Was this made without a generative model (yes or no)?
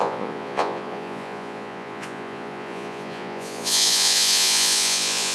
no